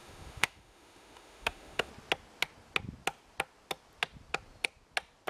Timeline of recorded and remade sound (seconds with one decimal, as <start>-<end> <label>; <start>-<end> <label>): 0.0-1.9 remade; 1.9-5.3 recorded

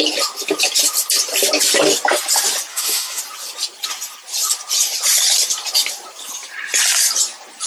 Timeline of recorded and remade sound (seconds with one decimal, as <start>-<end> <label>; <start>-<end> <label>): 0.0-2.7 recorded; 2.7-3.2 remade; 3.2-7.7 recorded

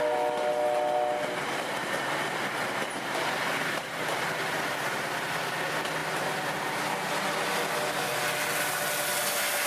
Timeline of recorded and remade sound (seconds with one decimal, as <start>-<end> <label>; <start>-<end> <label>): 0.0-9.7 recorded

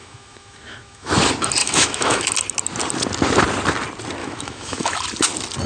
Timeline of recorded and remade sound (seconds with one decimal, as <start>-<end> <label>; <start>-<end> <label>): 0.0-1.1 remade; 1.1-1.6 recorded; 1.6-2.3 remade; 2.3-4.2 recorded; 4.2-5.0 remade; 5.0-5.7 recorded

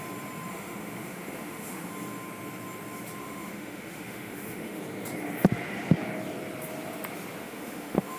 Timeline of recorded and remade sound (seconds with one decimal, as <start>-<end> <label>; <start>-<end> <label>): 0.0-0.5 recorded; 0.5-1.9 remade; 1.9-3.2 recorded; 3.2-4.8 remade; 4.8-7.4 recorded; 7.4-8.2 remade

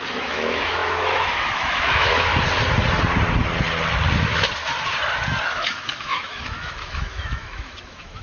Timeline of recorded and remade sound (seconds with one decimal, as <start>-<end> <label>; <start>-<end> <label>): 0.0-2.3 remade; 2.3-5.4 recorded; 5.4-8.2 remade

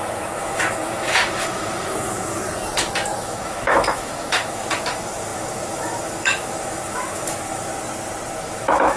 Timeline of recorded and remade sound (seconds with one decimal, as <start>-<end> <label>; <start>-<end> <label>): 0.0-2.4 remade; 2.4-3.2 recorded; 3.2-7.7 remade; 7.7-8.4 recorded; 8.4-9.0 remade

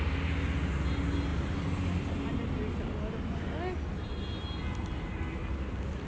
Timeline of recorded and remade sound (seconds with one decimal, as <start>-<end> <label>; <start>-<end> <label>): 0.0-6.1 recorded